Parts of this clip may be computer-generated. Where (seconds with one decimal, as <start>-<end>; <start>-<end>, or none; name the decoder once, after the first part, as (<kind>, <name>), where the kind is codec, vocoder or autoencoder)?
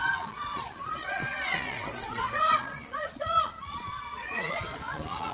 0.0-5.3 (vocoder, Vocos)